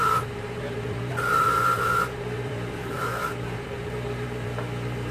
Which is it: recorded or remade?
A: remade